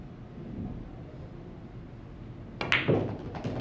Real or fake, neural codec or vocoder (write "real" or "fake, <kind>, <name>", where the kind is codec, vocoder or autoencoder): real